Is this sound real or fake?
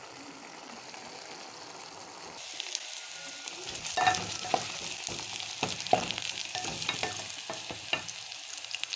real